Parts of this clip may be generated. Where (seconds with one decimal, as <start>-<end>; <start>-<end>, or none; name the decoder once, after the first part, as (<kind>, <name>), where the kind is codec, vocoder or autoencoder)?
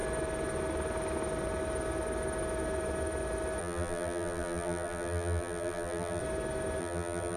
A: 3.6-6.2 (vocoder, BigVGAN v2); 6.8-7.4